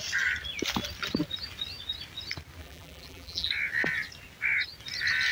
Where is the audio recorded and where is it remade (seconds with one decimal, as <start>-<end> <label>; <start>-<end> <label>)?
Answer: 0.0-2.6 recorded; 2.6-3.5 remade; 3.5-5.3 recorded